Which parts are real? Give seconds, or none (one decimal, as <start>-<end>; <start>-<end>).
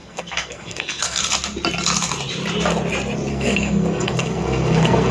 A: 1.2-3.3